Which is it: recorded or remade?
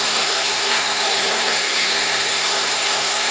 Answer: remade